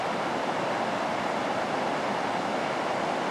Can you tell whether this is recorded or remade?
recorded